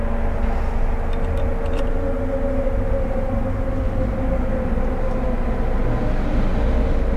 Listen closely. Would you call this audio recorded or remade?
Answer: recorded